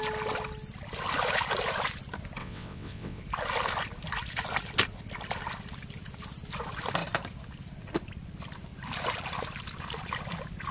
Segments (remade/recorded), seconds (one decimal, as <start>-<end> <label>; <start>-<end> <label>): 0.0-2.4 recorded; 2.4-3.2 remade; 3.2-10.7 recorded